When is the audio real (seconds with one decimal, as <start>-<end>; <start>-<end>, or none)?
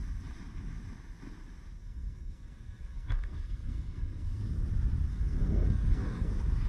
0.0-1.8; 4.4-5.1; 6.3-6.7